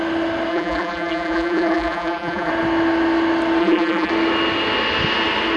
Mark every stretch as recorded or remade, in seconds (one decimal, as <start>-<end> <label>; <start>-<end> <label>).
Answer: 0.0-0.5 recorded; 0.5-2.5 remade; 2.5-3.6 recorded; 3.6-4.1 remade; 4.1-5.6 recorded